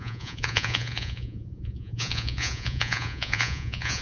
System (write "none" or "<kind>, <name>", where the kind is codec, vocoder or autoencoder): vocoder, Vocos